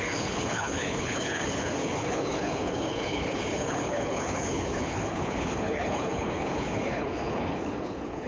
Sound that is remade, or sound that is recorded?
remade